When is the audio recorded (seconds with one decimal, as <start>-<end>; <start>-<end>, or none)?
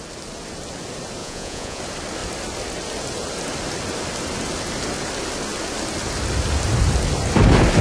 0.0-1.2; 1.8-7.8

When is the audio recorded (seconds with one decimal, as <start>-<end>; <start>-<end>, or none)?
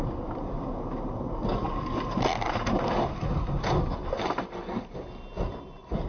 0.0-6.1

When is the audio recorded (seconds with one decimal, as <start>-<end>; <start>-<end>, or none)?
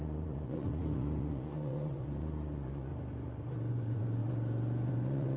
2.9-3.7; 4.2-4.9